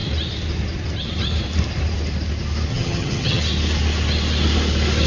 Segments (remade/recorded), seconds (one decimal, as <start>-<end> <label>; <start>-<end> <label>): 0.0-2.7 recorded; 2.7-3.4 remade; 3.4-5.1 recorded